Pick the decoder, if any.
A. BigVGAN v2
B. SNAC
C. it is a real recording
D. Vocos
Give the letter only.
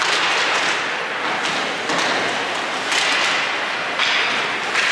C